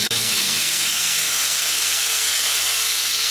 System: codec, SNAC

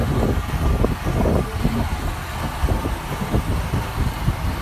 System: none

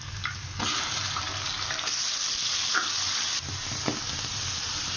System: none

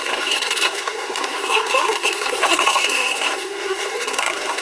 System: codec, SNAC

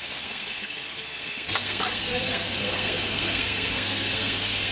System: codec, SNAC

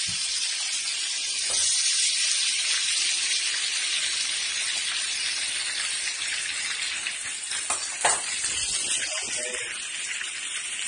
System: none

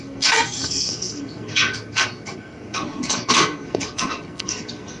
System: codec, SNAC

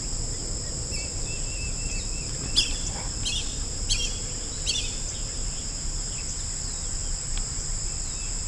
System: none